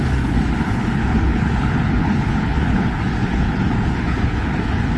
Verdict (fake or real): fake